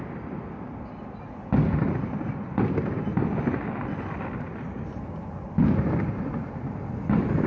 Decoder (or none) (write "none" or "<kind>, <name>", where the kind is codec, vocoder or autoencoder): none